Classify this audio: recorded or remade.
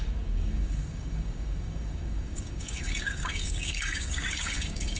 remade